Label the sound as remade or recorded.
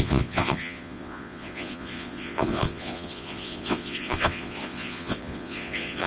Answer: remade